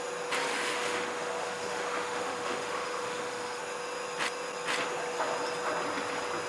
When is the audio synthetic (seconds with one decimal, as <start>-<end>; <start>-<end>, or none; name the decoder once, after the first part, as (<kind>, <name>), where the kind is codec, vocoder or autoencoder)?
0.5-3.6 (autoencoder, DAC-VAE)